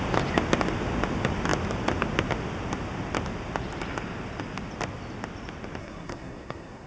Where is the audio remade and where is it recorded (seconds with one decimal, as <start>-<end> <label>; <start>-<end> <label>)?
0.0-5.8 recorded; 5.8-6.9 remade